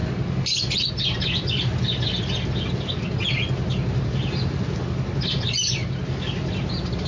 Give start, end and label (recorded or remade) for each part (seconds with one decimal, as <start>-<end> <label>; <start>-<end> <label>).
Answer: 0.0-7.1 recorded